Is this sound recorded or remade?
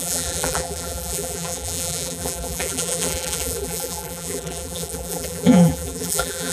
remade